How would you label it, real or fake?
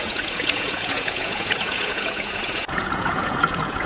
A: fake